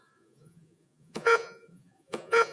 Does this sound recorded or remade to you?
remade